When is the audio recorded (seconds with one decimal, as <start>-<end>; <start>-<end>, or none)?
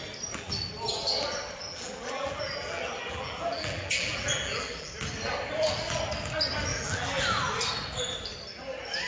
0.0-1.7; 4.9-6.7; 7.2-9.1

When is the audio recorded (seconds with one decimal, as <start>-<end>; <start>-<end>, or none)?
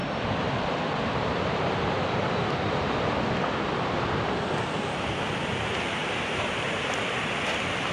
0.0-6.0; 7.0-7.9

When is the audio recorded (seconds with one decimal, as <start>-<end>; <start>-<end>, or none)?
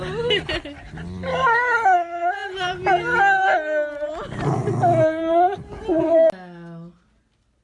0.0-2.4; 3.2-7.6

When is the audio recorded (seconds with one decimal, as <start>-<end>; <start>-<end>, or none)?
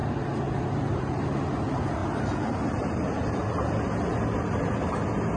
0.0-0.5; 3.4-5.4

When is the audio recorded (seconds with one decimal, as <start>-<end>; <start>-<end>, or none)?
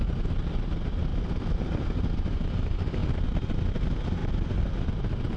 0.0-4.2; 4.7-5.4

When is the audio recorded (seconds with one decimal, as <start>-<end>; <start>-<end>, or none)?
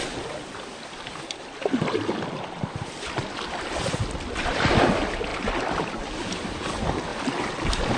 3.8-5.3; 5.9-7.1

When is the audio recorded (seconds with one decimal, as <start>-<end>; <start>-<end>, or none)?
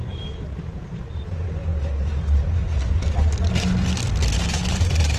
1.6-4.4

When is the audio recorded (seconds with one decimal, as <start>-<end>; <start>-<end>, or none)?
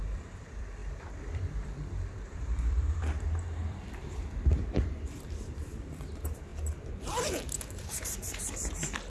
6.5-9.1